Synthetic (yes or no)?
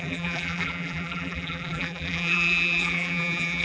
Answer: yes